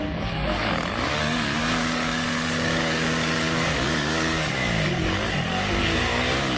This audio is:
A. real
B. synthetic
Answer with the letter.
B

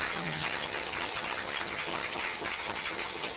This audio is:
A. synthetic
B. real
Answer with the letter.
A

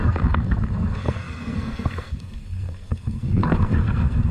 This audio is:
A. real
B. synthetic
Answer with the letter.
B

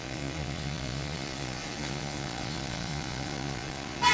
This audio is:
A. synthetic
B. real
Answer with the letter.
A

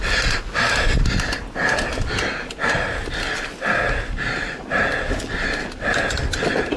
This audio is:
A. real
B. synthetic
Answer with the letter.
A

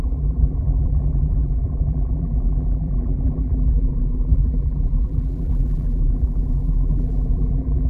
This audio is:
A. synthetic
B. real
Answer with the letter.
A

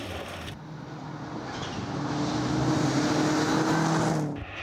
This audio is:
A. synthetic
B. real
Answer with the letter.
B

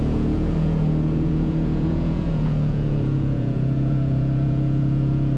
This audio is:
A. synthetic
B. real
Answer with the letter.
A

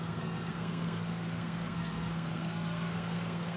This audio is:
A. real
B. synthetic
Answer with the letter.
B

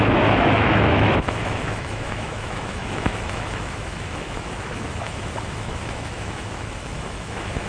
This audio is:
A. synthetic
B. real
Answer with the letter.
A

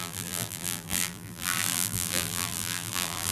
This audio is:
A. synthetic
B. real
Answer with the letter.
A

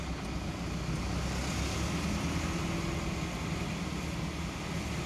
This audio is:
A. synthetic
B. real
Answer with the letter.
B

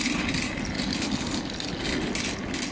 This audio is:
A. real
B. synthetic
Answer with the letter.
A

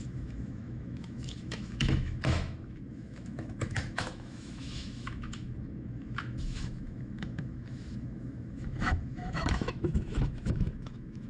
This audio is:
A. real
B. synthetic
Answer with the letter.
B